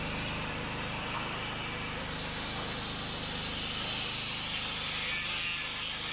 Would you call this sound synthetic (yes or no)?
no